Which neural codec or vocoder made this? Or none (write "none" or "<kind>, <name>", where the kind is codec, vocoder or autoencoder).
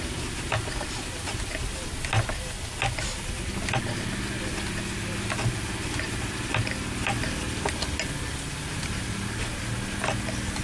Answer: none